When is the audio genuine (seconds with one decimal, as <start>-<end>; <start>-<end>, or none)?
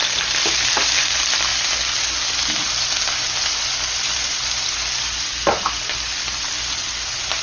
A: 0.0-7.4